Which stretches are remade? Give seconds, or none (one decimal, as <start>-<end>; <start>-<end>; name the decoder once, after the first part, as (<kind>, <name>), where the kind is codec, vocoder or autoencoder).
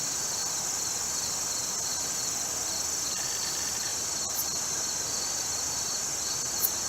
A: none